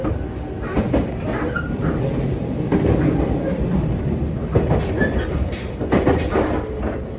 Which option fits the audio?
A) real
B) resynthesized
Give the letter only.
A